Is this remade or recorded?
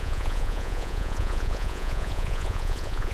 remade